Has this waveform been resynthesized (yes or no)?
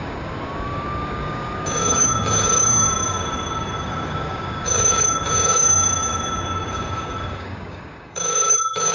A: yes